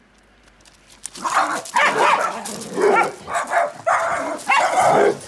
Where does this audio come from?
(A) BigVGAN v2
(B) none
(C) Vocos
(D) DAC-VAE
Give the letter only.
B